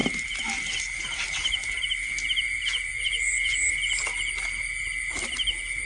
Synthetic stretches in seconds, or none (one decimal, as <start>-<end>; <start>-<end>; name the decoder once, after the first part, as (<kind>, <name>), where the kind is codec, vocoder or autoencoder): 0.0-2.1 (vocoder, BigVGAN v2)